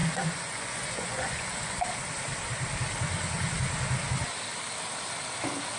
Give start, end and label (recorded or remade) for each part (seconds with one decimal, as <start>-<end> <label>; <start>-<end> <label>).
0.0-1.8 remade; 1.8-5.8 recorded